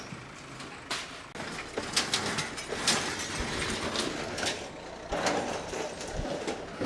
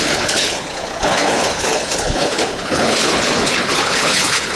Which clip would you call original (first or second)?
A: first